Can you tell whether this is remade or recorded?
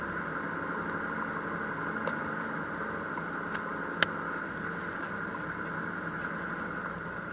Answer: recorded